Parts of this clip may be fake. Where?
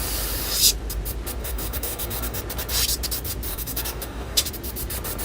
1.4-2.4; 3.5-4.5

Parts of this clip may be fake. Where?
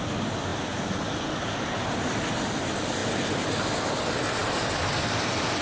none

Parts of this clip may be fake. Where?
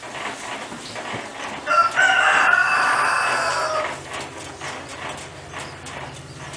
none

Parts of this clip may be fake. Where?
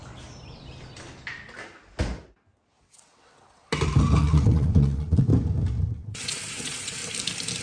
2.8-3.6; 4.2-5.3; 5.9-7.0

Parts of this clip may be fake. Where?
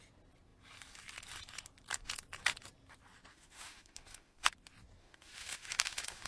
3.3-4.5; 5.0-6.3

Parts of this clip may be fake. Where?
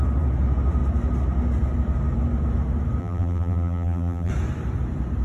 3.0-4.3